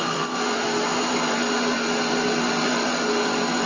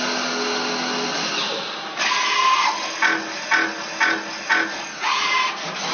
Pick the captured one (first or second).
second